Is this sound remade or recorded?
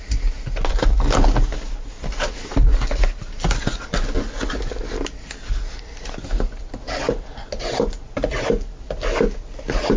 recorded